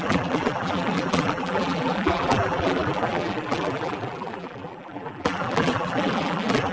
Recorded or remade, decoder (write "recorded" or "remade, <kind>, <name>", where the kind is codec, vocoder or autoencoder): remade, vocoder, BigVGAN v2